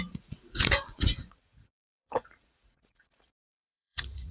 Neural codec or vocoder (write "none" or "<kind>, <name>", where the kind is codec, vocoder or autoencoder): vocoder, Vocos